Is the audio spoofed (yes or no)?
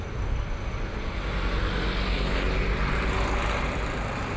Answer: no